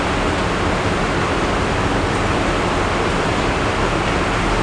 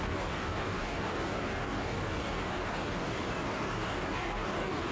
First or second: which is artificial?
second